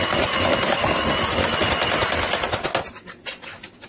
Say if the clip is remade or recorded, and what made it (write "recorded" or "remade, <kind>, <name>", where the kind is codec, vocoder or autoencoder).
recorded